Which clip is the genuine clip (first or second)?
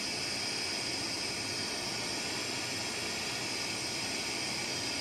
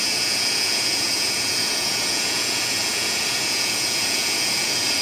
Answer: first